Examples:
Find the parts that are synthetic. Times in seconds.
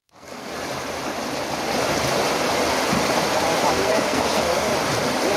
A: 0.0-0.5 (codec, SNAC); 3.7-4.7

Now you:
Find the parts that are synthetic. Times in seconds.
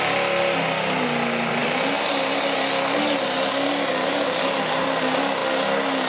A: none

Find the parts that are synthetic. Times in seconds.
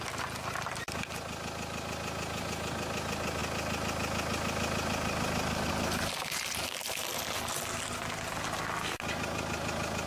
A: none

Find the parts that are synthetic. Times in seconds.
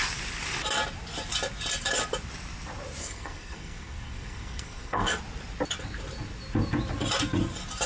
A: 3.0-5.2 (codec, SNAC)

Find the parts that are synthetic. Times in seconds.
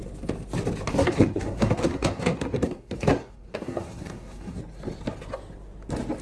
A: 0.9-4.6 (codec, SNAC)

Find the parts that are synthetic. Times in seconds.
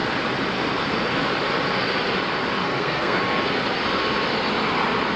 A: 2.6-3.2 (codec, SNAC)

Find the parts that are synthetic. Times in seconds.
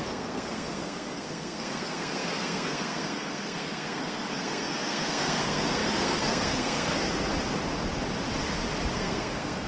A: 0.0-7.3 (codec, SNAC); 8.9-9.7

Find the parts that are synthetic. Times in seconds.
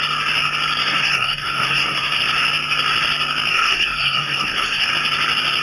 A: 0.8-2.2 (codec, SNAC); 3.5-4.9